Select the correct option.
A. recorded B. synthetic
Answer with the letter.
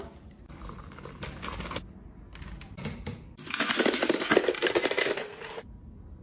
A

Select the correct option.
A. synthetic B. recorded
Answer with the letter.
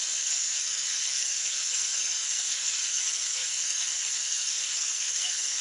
A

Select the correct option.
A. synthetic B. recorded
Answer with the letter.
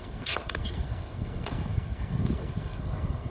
A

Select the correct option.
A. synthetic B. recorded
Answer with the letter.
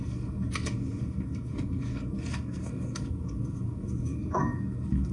A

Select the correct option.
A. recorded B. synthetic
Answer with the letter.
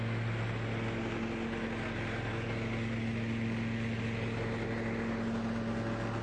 A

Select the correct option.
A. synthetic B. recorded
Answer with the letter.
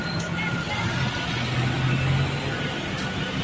B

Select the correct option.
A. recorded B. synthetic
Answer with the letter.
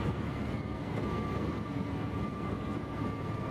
B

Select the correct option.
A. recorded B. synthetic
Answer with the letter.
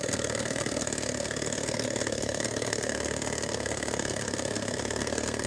B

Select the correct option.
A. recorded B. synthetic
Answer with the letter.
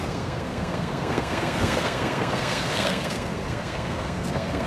B